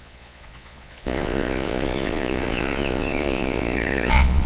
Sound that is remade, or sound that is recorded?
remade